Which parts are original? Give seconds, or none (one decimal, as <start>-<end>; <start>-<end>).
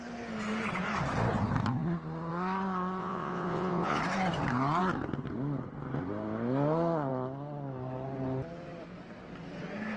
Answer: 0.0-3.0; 4.0-10.0